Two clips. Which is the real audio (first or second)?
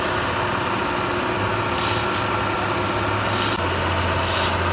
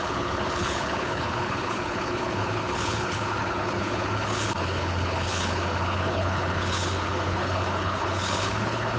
first